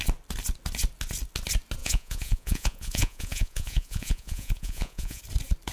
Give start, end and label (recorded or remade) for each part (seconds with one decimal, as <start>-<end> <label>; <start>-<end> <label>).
0.0-1.8 recorded; 1.8-5.2 remade; 5.2-5.7 recorded